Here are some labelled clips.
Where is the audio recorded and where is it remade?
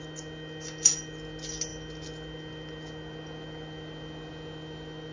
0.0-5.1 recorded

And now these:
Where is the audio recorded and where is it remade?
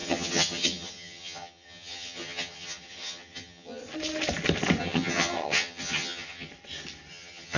0.0-3.8 remade; 3.8-4.8 recorded; 4.8-6.5 remade; 6.5-7.1 recorded; 7.1-7.6 remade